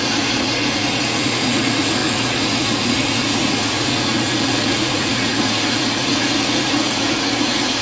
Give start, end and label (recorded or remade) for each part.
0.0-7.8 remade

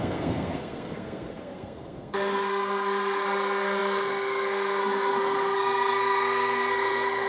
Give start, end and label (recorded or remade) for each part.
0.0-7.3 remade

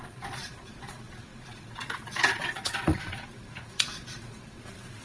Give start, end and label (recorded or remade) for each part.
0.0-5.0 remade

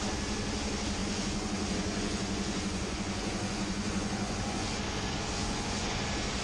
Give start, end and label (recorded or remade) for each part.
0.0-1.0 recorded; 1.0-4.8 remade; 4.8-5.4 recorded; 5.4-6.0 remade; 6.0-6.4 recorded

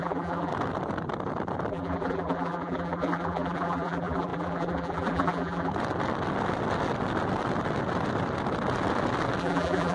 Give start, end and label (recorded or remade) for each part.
0.0-0.5 remade; 0.5-1.7 recorded; 1.7-5.7 remade; 5.7-9.4 recorded; 9.4-9.9 remade

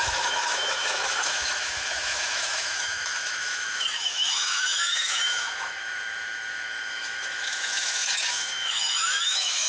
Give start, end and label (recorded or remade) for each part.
0.0-9.7 remade